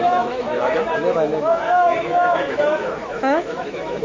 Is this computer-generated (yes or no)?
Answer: yes